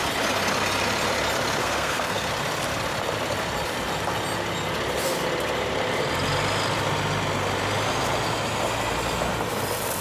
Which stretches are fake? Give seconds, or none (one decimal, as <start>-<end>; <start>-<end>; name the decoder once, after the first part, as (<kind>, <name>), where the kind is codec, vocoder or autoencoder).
1.6-2.3 (codec, SNAC)